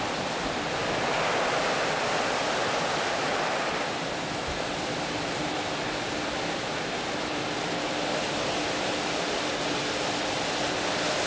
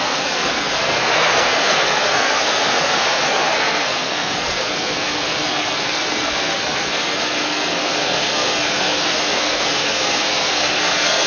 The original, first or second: first